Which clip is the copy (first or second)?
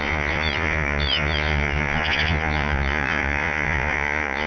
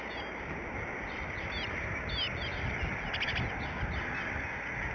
first